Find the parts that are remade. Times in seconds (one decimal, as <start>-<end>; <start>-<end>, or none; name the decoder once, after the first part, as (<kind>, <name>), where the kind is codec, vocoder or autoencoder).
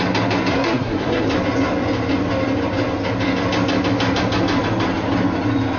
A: 0.5-1.3 (codec, SNAC)